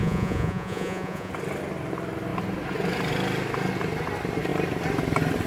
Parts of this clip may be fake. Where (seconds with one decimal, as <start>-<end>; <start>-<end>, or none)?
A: 0.0-1.3